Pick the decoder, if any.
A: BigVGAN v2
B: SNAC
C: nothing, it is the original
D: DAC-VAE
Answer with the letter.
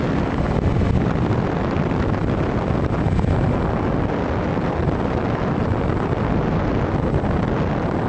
C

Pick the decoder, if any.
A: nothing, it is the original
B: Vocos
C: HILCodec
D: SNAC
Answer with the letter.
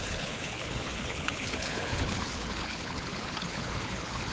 C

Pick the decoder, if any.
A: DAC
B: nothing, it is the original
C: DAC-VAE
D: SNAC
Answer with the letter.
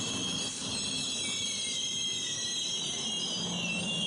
B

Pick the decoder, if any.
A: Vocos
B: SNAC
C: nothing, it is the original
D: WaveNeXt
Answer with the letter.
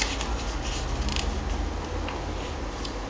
C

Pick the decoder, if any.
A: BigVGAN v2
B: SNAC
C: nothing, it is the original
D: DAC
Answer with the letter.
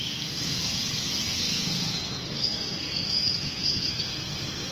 B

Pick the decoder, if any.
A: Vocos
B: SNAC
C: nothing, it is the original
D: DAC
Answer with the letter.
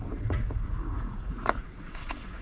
A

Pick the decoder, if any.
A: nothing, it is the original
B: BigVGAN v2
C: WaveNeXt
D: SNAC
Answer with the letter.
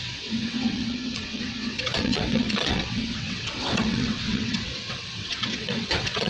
C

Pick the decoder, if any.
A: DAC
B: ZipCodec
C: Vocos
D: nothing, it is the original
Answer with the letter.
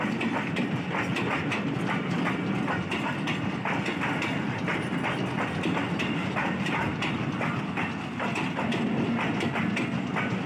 D